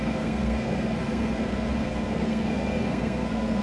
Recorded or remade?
remade